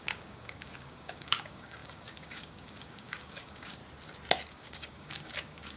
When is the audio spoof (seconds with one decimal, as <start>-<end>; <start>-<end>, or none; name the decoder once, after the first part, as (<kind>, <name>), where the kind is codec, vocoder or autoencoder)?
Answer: 0.0-3.8 (codec, DAC); 4.5-5.8